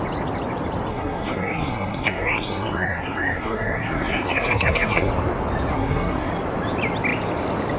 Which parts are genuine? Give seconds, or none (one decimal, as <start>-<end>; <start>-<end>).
0.0-0.9; 5.1-5.7; 6.3-7.8